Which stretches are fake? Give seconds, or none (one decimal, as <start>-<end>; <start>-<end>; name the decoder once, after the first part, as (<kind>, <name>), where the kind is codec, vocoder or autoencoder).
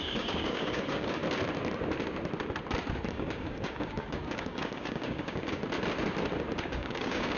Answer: 0.0-1.2 (codec, DAC); 3.1-5.6; 6.6-7.4